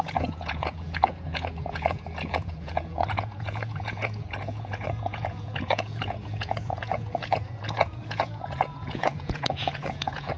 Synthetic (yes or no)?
yes